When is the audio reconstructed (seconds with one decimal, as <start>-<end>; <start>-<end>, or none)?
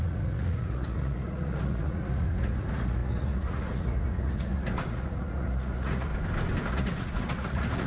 0.0-6.1; 6.7-7.9